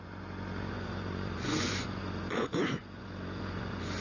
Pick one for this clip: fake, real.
fake